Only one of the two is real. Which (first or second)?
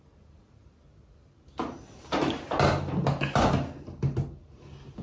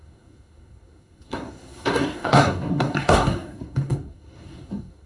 first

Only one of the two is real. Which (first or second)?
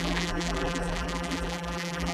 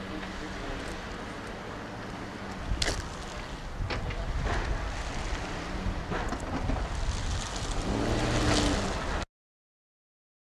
second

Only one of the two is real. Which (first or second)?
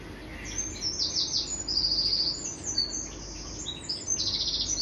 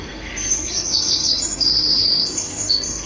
first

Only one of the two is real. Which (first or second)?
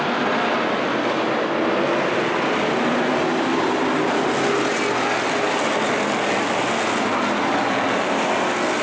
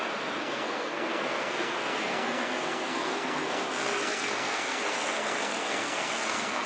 first